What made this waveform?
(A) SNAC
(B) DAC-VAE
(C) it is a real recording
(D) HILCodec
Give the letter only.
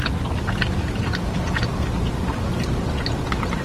C